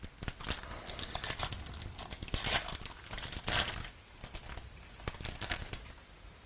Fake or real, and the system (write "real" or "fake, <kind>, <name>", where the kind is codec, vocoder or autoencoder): real